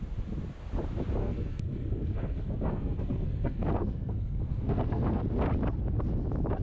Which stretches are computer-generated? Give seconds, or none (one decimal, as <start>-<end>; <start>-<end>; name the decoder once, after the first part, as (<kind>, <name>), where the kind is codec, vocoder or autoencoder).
1.2-5.2 (codec, SNAC)